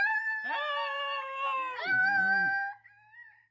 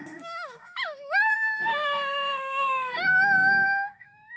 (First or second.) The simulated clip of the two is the second